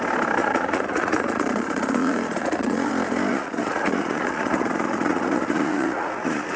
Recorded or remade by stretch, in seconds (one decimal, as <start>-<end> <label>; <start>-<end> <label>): 0.0-0.4 recorded; 0.4-2.9 remade; 2.9-3.3 recorded; 3.3-6.6 remade